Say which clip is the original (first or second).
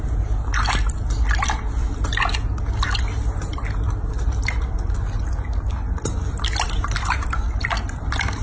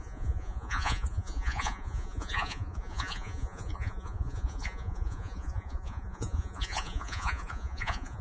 first